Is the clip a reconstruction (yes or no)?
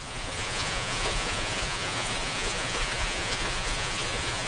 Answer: yes